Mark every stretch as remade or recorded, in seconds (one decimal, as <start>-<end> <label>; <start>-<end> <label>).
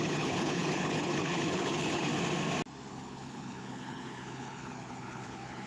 0.0-2.1 remade; 2.1-2.9 recorded; 2.9-5.7 remade